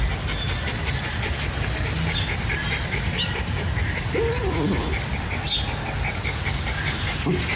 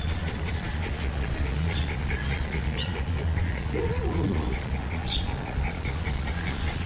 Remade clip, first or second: second